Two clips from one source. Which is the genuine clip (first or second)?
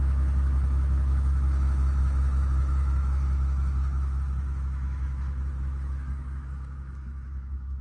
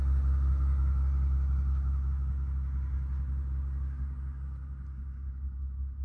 second